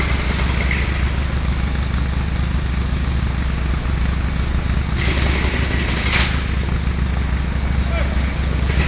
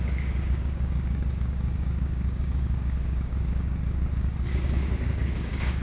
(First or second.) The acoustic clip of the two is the first